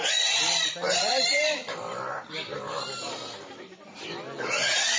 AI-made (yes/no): yes